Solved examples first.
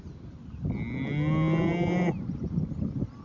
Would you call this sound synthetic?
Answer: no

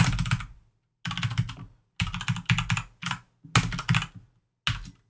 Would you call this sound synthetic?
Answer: no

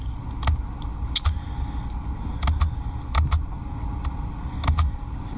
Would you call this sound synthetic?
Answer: no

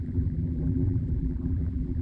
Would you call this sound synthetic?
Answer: yes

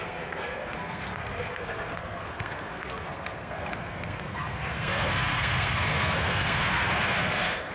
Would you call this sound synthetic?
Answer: yes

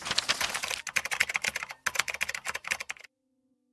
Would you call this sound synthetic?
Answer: no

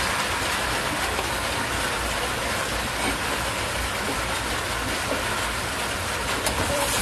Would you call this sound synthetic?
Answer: yes